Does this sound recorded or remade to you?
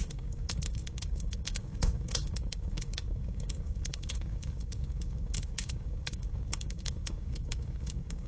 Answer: remade